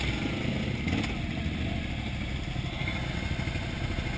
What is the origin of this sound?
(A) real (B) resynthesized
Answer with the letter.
A